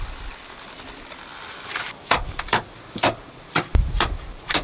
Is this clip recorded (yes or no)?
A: no